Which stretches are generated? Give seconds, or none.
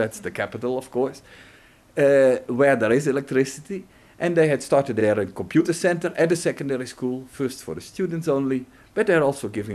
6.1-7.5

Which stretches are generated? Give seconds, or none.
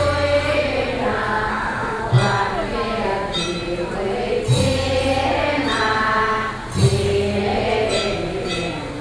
1.5-2.0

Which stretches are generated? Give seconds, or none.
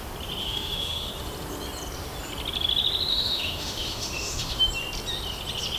0.4-1.1; 3.1-4.6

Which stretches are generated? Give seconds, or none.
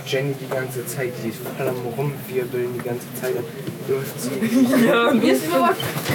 0.0-1.2; 3.4-6.1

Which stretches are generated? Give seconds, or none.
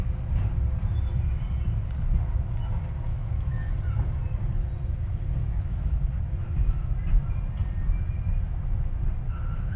3.1-3.7; 5.4-6.0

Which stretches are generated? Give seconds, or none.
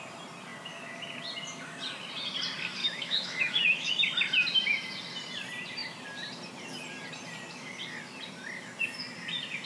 2.8-3.9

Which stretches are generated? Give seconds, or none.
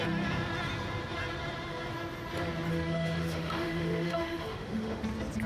2.7-5.0